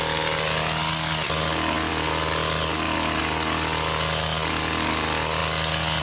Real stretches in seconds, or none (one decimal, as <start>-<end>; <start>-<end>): 0.0-6.0